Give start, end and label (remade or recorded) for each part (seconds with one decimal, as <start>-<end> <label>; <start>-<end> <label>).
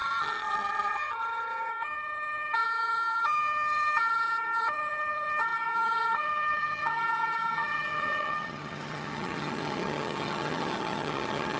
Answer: 0.0-11.6 remade